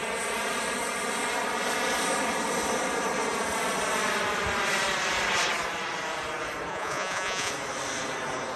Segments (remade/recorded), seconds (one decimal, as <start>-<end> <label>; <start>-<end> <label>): 0.0-6.7 recorded; 6.7-7.5 remade; 7.5-8.6 recorded